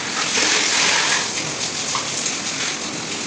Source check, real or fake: real